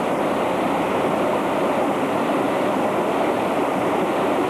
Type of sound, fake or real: real